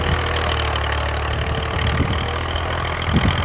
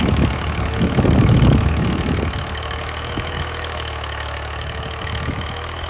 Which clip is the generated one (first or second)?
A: second